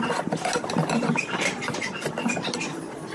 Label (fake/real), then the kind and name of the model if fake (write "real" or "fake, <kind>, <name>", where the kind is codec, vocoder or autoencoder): fake, vocoder, BigVGAN v2